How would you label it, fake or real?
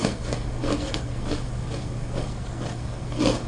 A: fake